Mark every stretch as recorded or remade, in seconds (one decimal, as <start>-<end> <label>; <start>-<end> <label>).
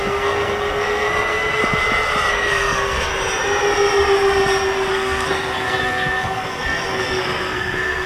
0.0-1.6 remade; 1.6-2.3 recorded; 2.3-3.1 remade; 3.1-4.9 recorded; 4.9-8.1 remade